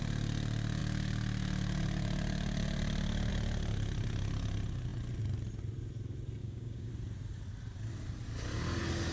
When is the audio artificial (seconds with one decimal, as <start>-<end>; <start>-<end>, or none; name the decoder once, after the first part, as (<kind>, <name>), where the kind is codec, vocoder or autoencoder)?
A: 6.4-6.9 (codec, DAC)